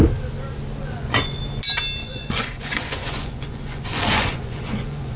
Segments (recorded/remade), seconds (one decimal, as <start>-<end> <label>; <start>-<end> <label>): 0.0-0.8 recorded; 0.8-1.4 remade; 1.4-2.0 recorded; 2.0-5.2 remade